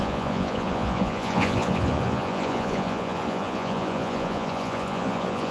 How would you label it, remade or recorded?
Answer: remade